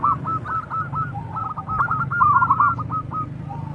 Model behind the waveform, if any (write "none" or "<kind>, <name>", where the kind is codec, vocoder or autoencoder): none